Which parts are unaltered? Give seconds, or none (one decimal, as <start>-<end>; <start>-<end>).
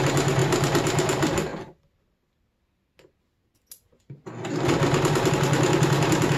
0.0-6.4